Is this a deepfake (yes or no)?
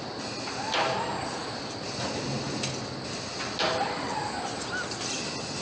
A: no